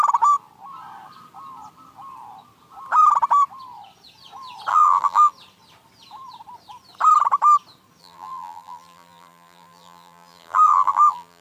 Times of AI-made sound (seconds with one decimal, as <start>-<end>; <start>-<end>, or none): 4.7-5.3; 8.0-11.4